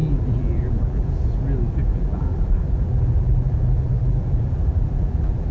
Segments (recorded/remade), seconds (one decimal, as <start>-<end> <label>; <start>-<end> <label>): 0.0-1.1 remade; 1.1-1.9 recorded; 1.9-5.5 remade